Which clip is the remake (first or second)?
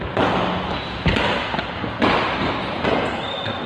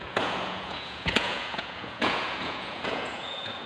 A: second